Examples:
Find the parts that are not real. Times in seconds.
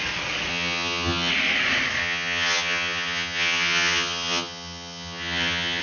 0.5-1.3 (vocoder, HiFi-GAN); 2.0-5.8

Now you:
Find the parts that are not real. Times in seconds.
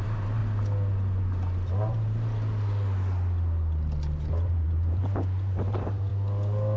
0.0-0.4 (vocoder, BigVGAN v2); 4.5-5.0; 5.6-6.1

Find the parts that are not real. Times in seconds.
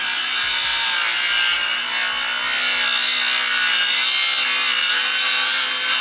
4.8-5.6 (vocoder, BigVGAN v2)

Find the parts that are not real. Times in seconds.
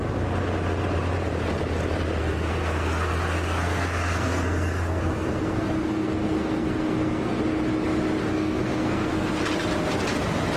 2.2-7.4 (codec, SNAC); 8.2-9.3